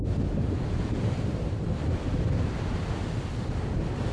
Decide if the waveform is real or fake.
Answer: real